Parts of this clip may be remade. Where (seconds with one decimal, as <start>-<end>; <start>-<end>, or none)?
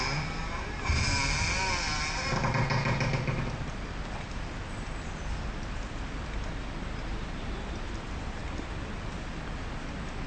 none